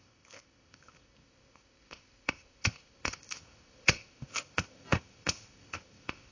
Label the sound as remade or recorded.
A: remade